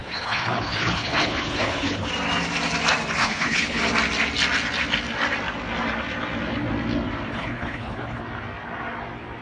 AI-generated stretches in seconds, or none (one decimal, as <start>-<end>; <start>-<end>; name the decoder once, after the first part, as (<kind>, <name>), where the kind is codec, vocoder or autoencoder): 0.0-2.1 (codec, HILCodec); 3.2-3.8; 7.3-8.2